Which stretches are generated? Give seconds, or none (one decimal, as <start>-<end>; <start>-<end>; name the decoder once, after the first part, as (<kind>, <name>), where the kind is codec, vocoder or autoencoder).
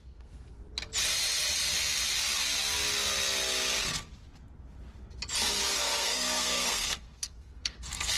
0.0-0.6 (codec, SNAC); 5.5-8.2